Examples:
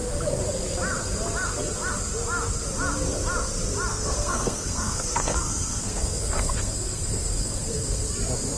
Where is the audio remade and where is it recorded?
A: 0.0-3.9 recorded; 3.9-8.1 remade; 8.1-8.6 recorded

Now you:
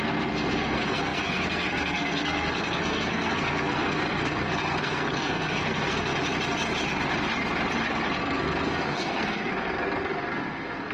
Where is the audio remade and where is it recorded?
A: 0.0-6.1 remade; 6.1-8.2 recorded; 8.2-10.9 remade

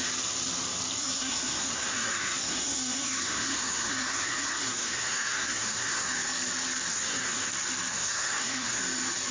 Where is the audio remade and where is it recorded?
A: 0.0-1.0 recorded; 1.0-6.1 remade; 6.1-6.9 recorded; 6.9-7.5 remade; 7.5-7.9 recorded; 7.9-8.8 remade; 8.8-9.3 recorded